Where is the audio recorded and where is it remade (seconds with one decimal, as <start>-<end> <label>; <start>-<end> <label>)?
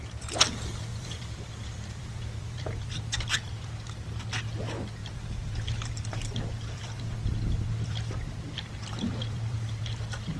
0.0-0.9 recorded; 0.9-3.8 remade; 3.8-5.0 recorded; 5.0-10.4 remade